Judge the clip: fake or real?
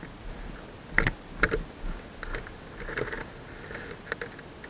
real